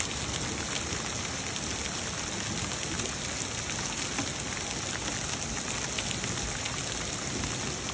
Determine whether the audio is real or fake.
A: real